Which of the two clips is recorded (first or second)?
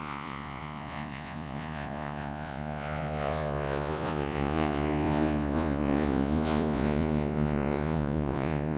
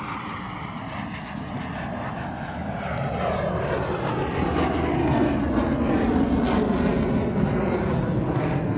second